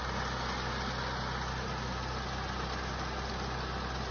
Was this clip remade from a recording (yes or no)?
no